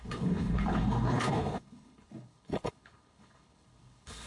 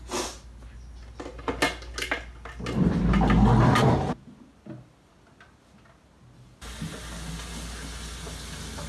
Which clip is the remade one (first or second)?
first